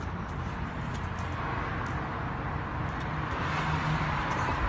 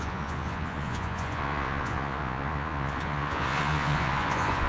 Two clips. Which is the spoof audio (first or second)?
second